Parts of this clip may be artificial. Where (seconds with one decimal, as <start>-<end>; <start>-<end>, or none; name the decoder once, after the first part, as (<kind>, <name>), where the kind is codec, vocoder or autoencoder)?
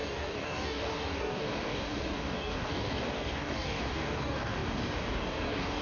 0.0-5.8 (codec, DAC)